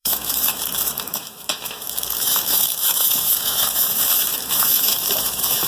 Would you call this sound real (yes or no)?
no